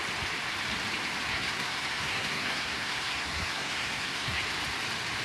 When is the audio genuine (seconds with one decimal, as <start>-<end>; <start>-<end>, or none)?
0.0-1.3; 4.4-5.2